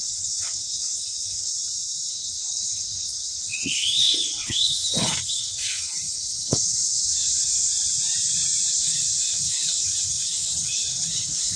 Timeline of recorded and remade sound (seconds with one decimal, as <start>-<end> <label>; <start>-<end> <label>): 0.0-1.5 remade; 1.5-2.1 recorded; 2.1-7.7 remade; 7.7-8.7 recorded; 8.7-11.6 remade